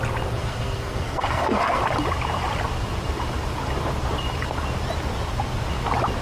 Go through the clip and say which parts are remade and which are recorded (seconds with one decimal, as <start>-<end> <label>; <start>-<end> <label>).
0.0-0.4 recorded; 0.4-1.8 remade; 1.8-6.2 recorded